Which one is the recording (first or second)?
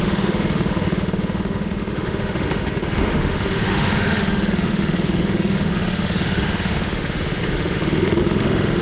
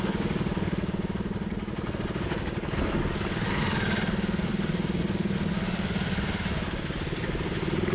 second